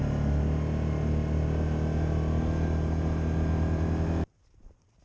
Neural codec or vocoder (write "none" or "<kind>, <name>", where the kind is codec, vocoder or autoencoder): none